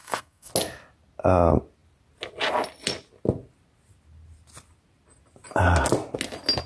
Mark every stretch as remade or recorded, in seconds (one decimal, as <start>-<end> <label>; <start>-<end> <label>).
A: 0.0-0.5 remade; 0.5-6.7 recorded